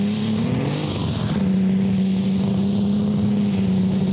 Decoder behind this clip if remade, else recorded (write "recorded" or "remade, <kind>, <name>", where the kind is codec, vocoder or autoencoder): recorded